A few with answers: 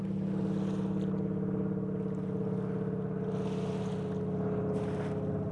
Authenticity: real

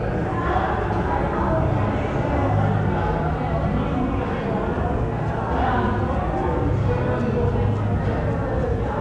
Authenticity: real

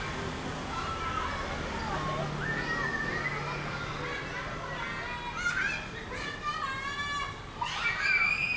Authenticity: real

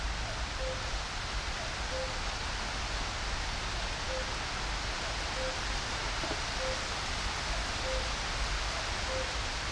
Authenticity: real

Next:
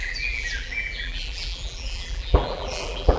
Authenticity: fake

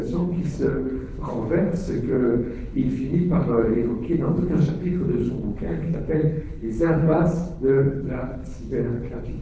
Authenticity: fake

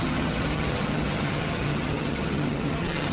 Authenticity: fake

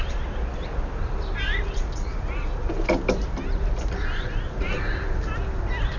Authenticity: real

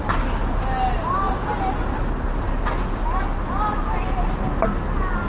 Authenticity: real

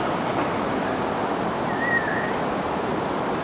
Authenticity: real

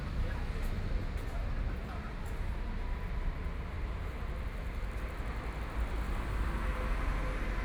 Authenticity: real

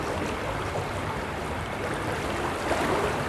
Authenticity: fake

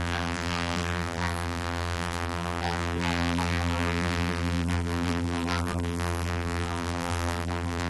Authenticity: fake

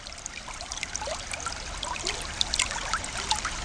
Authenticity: real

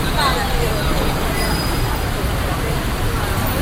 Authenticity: real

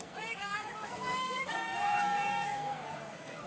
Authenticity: fake